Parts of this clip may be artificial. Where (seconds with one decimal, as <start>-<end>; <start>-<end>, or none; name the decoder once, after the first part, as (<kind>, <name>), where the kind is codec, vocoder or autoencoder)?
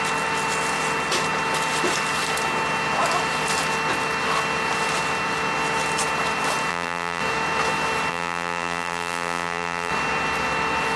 6.7-7.2 (vocoder, BigVGAN v2); 8.1-9.9